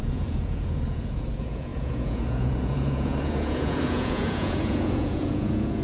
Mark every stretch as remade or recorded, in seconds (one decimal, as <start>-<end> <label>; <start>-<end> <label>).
0.0-5.8 remade